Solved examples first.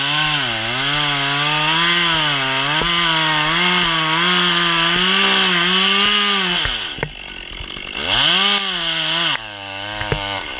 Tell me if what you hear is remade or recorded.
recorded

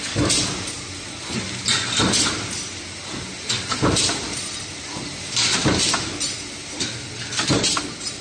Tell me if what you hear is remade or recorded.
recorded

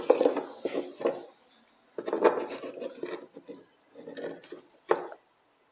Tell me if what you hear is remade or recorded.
recorded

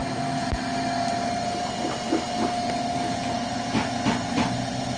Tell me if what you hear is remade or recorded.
recorded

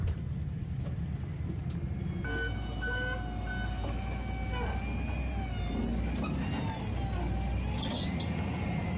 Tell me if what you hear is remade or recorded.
recorded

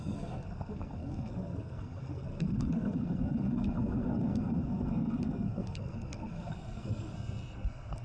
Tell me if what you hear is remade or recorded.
remade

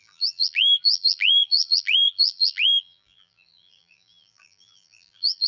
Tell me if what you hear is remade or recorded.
remade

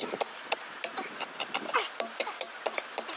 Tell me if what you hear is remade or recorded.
recorded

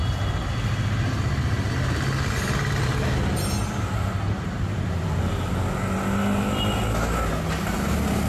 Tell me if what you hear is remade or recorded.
recorded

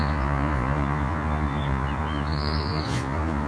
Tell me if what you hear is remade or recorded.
remade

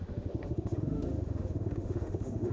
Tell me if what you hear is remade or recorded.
remade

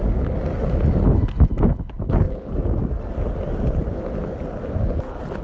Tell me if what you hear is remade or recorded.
recorded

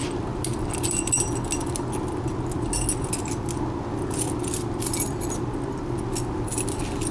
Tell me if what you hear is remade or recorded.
recorded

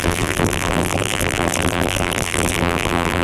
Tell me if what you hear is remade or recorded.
remade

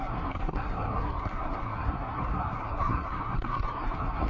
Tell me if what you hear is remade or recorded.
remade